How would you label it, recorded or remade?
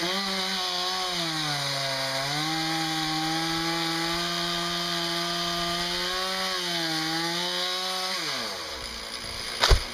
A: recorded